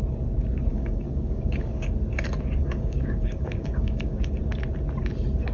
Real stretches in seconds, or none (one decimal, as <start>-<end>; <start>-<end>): 0.0-0.7; 1.9-2.6; 4.3-5.5